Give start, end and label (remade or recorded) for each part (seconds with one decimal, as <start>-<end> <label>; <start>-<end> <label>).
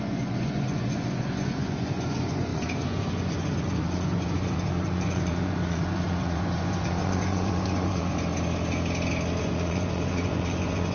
0.0-8.1 remade; 8.1-9.4 recorded; 9.4-10.9 remade